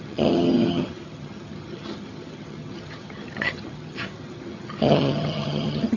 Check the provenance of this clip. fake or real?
fake